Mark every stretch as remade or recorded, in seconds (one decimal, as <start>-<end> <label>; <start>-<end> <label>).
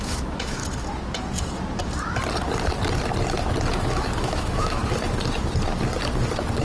0.0-0.6 remade; 0.6-3.7 recorded; 3.7-4.8 remade; 4.8-6.6 recorded